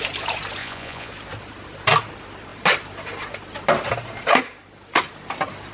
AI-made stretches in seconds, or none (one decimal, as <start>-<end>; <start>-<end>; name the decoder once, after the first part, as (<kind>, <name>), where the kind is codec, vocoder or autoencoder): 0.6-1.1 (vocoder, Vocos)